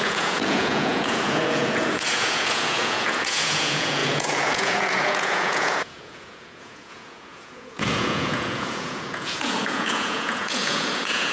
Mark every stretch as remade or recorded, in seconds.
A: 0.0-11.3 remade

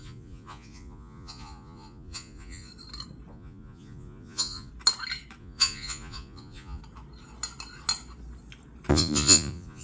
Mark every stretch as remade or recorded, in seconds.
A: 0.0-2.7 remade; 2.7-3.3 recorded; 3.3-4.7 remade; 4.7-5.4 recorded; 5.4-6.8 remade; 6.8-8.9 recorded; 8.9-9.8 remade

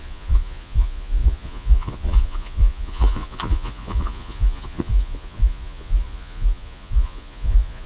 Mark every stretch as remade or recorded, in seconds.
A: 0.0-7.9 remade

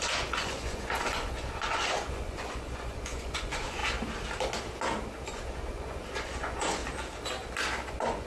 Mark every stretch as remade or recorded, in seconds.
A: 0.0-3.8 remade; 3.8-5.3 recorded; 5.3-6.8 remade; 6.8-7.9 recorded; 7.9-8.3 remade

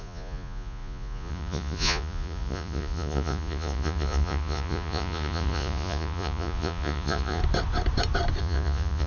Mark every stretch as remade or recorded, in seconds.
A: 0.0-7.4 remade; 7.4-8.4 recorded; 8.4-9.1 remade

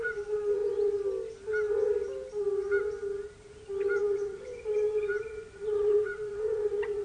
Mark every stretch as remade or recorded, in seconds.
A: 0.0-0.6 remade; 0.6-4.0 recorded; 4.0-7.0 remade